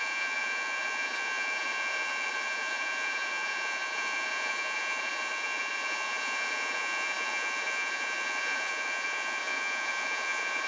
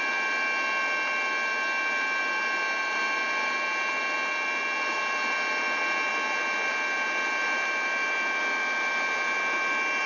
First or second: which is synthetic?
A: first